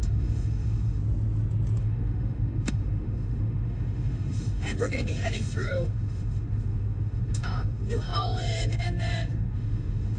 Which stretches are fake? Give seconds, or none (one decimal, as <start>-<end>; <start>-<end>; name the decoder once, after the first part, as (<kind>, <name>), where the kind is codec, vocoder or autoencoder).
0.0-1.0 (autoencoder, DAC-VAE); 1.8-10.2